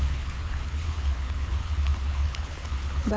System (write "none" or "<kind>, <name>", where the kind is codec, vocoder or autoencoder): codec, HILCodec